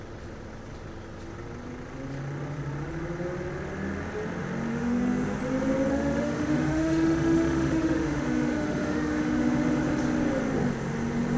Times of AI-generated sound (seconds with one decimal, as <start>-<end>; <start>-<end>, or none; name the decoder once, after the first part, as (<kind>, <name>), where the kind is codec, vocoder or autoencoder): 4.7-5.4 (autoencoder, DAC-VAE); 5.9-9.9